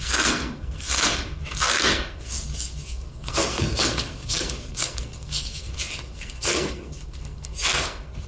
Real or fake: fake